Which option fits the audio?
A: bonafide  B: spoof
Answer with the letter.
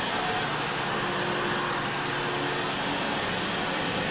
A